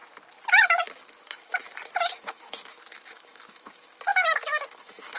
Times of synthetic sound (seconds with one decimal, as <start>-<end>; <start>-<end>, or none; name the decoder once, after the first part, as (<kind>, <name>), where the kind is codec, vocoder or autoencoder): 0.8-1.6 (autoencoder, DAC-VAE); 2.3-5.2